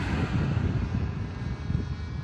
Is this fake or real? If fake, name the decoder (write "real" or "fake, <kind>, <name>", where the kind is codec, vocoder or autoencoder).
real